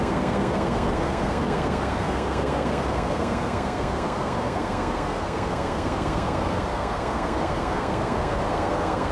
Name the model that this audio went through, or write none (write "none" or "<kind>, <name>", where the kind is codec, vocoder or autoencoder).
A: codec, SNAC